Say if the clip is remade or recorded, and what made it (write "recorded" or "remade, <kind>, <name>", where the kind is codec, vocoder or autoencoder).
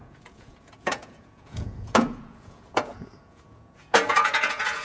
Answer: remade, vocoder, Vocos